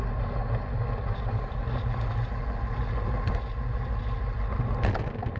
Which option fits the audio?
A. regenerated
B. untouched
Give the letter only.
B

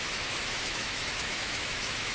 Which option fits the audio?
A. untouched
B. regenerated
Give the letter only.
B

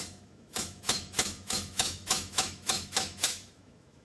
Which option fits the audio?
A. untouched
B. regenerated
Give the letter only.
B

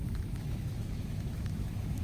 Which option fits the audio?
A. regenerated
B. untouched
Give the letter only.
A